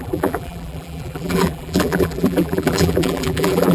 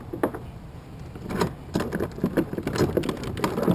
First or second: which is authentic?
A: second